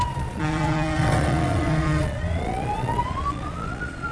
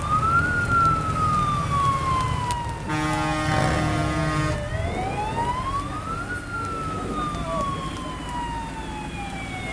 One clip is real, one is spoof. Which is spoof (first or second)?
first